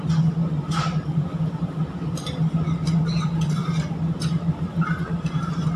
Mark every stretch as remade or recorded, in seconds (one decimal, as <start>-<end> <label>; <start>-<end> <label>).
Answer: 0.0-3.6 recorded; 3.6-5.8 remade